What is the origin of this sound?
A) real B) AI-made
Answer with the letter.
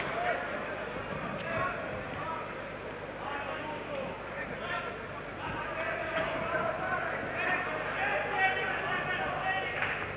A